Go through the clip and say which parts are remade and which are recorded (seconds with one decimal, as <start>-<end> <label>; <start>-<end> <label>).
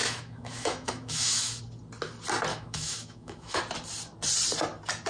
0.0-1.6 remade; 1.6-2.5 recorded; 2.5-3.6 remade; 3.6-5.1 recorded